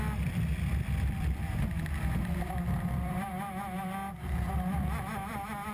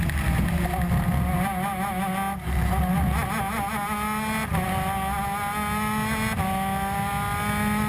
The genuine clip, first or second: second